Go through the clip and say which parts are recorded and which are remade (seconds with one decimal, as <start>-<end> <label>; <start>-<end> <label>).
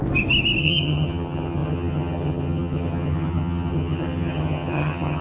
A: 0.0-0.6 recorded; 0.6-5.2 remade